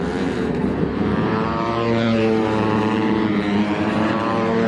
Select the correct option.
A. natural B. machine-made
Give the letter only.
B